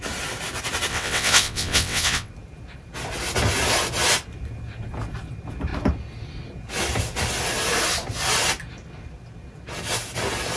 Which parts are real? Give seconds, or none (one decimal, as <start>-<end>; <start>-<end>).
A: 0.0-0.9; 2.3-10.6